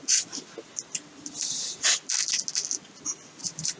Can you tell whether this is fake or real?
real